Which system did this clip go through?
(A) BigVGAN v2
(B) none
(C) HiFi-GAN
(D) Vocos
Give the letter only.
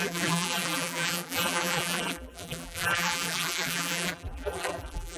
A